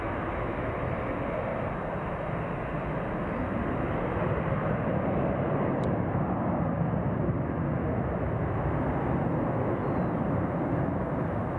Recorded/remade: recorded